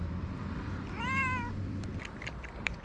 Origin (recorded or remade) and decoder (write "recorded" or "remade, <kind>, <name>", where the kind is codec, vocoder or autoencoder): remade, vocoder, BigVGAN v2